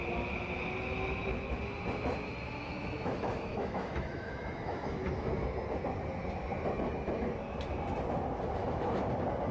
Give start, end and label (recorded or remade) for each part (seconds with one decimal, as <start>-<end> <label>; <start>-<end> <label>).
0.0-2.6 recorded; 2.6-5.3 remade; 5.3-8.6 recorded; 8.6-9.1 remade; 9.1-9.5 recorded